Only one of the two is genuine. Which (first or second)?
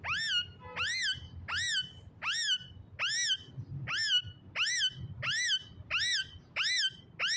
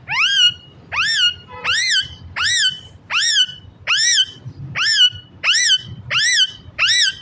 first